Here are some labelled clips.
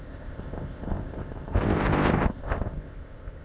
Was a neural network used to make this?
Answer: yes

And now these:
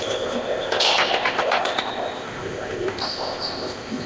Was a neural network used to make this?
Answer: yes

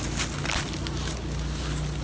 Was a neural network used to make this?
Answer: no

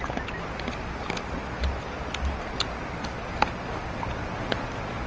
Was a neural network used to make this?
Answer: no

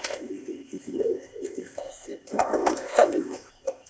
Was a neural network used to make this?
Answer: yes